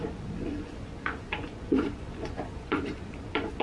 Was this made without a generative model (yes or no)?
no